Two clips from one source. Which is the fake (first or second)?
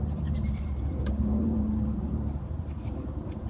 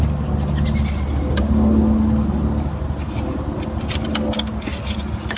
first